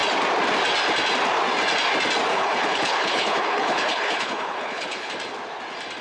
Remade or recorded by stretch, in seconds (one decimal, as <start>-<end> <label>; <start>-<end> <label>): 0.0-2.3 recorded; 2.3-5.1 remade; 5.1-6.0 recorded